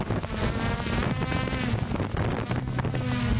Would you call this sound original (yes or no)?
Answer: yes